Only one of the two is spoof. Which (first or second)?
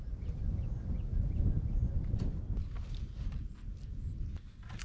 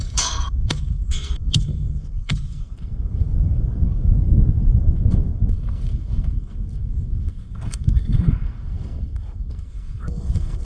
second